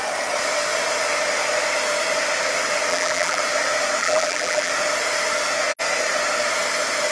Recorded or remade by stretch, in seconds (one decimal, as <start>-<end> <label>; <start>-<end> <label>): 0.0-2.9 recorded; 2.9-3.4 remade; 3.4-4.0 recorded; 4.0-4.7 remade; 4.7-7.1 recorded